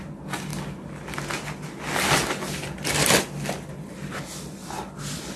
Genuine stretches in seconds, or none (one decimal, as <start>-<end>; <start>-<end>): 0.0-5.4